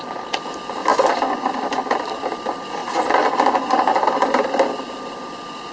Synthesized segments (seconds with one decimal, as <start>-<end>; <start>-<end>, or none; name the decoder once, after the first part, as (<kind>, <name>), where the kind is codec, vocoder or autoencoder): none